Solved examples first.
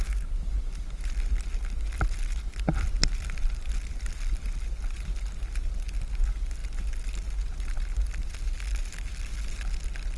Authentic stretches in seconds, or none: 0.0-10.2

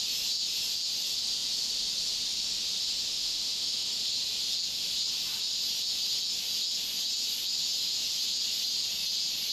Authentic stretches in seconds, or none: 0.0-3.1; 3.9-9.5

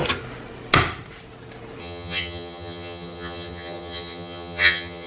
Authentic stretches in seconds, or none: 0.0-1.8

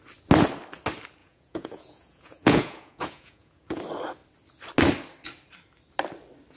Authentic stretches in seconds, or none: 0.0-1.2; 3.8-6.6

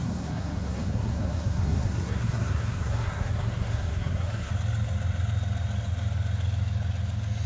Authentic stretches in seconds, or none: 4.5-7.5

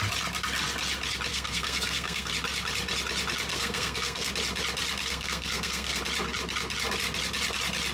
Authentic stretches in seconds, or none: 0.0-1.3; 2.3-3.5; 4.3-5.0; 6.0-7.9

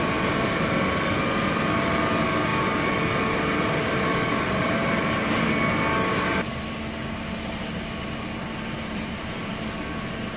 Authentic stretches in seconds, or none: 0.0-10.4

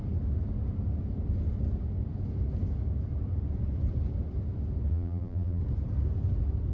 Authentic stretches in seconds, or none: 0.0-4.9; 5.6-6.7